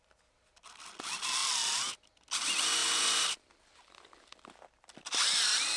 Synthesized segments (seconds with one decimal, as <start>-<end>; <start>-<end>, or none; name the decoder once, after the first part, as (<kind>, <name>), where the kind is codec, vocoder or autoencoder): 2.8-5.8 (vocoder, BigVGAN v2)